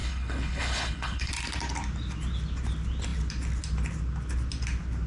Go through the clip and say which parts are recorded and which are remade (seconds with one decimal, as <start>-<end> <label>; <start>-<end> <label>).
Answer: 0.0-1.3 remade; 1.3-5.1 recorded